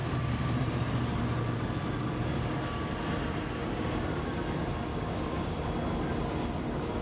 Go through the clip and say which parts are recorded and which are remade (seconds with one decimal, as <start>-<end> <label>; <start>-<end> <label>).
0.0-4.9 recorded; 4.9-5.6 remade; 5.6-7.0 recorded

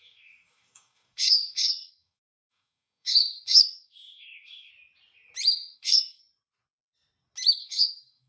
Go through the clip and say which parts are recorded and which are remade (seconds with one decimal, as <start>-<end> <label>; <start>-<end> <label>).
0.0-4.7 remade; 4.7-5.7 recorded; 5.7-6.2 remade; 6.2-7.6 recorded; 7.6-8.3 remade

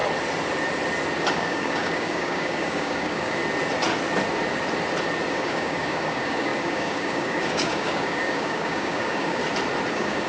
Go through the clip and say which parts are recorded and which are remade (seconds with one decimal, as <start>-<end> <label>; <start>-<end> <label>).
0.0-1.3 recorded; 1.3-3.4 remade; 3.4-5.3 recorded; 5.3-9.4 remade; 9.4-9.9 recorded; 9.9-10.3 remade

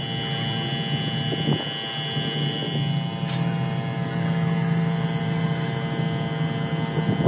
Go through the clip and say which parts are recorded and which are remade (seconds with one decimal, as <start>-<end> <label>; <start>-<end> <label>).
0.0-7.3 recorded

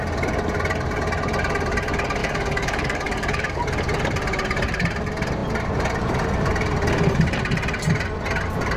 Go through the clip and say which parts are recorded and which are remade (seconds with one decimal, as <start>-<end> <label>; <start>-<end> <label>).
0.0-2.2 recorded; 2.2-3.6 remade; 3.6-8.8 recorded

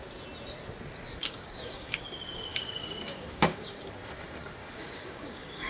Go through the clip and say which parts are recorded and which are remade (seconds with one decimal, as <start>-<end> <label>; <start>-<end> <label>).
0.0-1.2 recorded; 1.2-2.0 remade; 2.0-2.5 recorded; 2.5-3.9 remade; 3.9-4.6 recorded; 4.6-5.7 remade

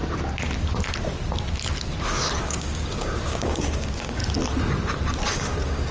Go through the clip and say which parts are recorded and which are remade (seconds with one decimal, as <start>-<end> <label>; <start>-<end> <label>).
0.0-2.4 recorded; 2.4-4.2 remade; 4.2-5.3 recorded; 5.3-5.9 remade

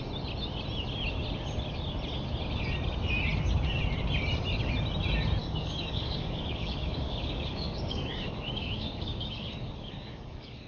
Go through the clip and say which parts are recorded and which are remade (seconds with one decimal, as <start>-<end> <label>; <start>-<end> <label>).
0.0-5.4 recorded; 5.4-10.7 remade